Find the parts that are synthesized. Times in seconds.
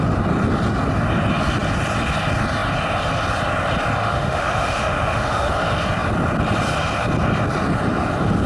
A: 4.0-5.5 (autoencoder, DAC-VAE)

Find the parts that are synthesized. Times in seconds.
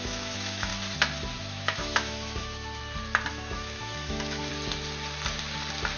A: 0.0-0.7 (autoencoder, DAC-VAE); 1.4-2.8; 3.3-4.5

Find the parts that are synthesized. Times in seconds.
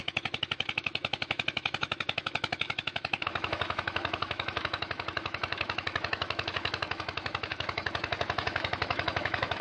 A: 0.0-9.6 (autoencoder, DAC-VAE)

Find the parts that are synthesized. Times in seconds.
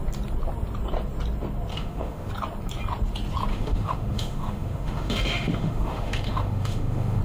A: 1.7-2.3 (autoencoder, DAC-VAE); 3.5-7.2